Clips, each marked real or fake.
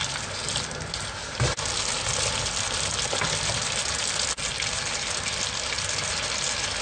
real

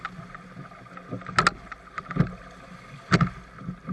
real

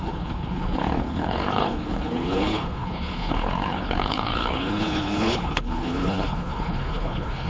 fake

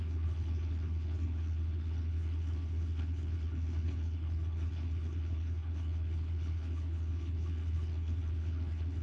fake